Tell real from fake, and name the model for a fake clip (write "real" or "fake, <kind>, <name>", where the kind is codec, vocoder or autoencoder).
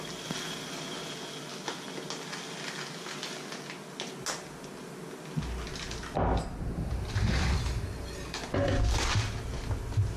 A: real